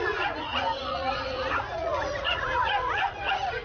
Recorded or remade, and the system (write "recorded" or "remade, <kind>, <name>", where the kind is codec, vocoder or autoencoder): remade, vocoder, Vocos